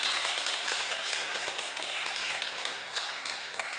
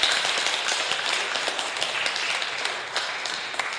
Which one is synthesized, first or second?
first